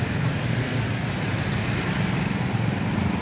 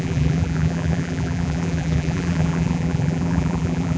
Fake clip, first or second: second